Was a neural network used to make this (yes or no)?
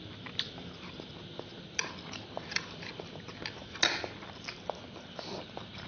no